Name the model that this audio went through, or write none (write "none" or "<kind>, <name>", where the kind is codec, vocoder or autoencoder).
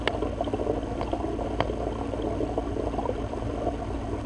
none